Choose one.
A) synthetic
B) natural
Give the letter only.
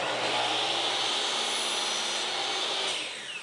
B